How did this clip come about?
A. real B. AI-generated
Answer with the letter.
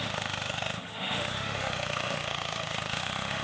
B